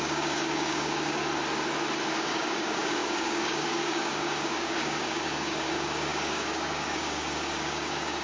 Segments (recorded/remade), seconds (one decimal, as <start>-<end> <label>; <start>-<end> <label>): 0.0-1.2 remade; 1.2-2.1 recorded; 2.1-8.2 remade